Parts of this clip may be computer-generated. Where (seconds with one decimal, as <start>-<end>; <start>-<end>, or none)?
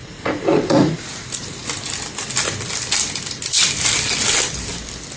0.0-1.1